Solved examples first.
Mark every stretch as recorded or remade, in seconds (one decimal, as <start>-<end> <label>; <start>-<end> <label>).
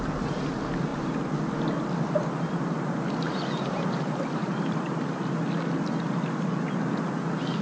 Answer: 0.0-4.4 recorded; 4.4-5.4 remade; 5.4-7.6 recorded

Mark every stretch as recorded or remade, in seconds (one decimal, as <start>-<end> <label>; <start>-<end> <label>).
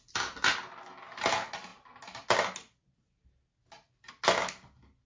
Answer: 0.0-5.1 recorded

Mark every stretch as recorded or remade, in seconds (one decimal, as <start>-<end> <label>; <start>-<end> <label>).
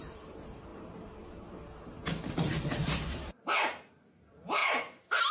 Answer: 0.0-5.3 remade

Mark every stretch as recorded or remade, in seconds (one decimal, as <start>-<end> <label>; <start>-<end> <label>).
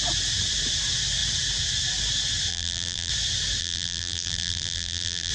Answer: 0.0-2.5 recorded; 2.5-3.1 remade; 3.1-3.6 recorded; 3.6-5.3 remade